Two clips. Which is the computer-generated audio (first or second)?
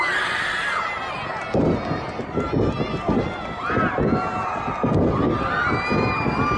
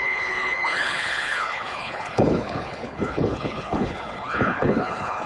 second